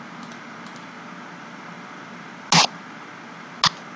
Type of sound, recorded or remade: recorded